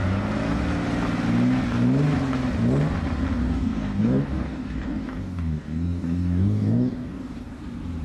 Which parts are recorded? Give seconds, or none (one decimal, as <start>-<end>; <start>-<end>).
0.0-3.4; 7.6-8.0